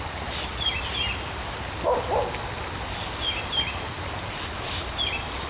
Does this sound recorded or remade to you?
recorded